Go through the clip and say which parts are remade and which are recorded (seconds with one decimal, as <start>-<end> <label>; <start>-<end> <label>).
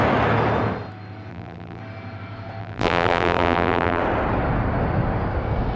0.0-1.3 recorded; 1.3-1.8 remade; 1.8-2.6 recorded; 2.6-4.0 remade; 4.0-5.8 recorded